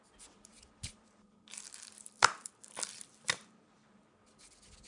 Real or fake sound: fake